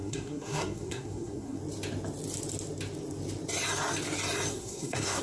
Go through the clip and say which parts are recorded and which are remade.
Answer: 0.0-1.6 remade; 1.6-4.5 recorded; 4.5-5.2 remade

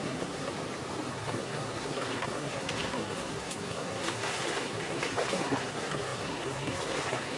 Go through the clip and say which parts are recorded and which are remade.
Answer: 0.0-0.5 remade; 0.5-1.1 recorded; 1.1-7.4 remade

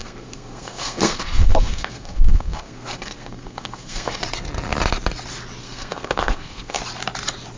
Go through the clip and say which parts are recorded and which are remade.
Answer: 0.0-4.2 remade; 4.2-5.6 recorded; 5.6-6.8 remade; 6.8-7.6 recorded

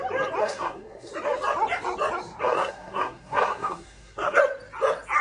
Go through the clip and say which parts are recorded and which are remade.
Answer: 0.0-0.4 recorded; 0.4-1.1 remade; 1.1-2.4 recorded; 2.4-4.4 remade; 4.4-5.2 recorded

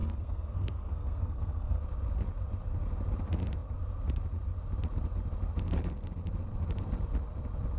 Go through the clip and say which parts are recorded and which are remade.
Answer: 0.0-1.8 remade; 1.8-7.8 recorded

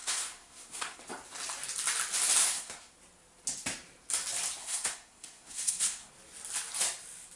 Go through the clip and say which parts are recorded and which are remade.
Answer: 0.0-1.0 remade; 1.0-2.4 recorded; 2.4-2.9 remade; 2.9-4.6 recorded; 4.6-6.1 remade; 6.1-7.4 recorded

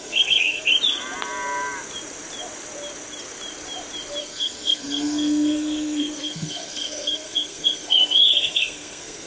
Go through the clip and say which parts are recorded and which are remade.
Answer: 0.0-0.7 remade; 0.7-4.2 recorded; 4.2-9.3 remade